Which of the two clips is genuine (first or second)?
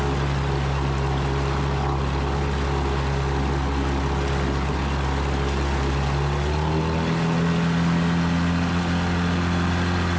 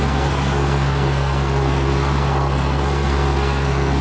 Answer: first